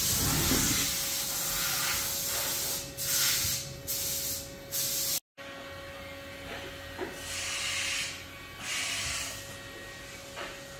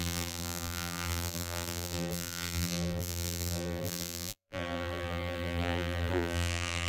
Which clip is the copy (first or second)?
second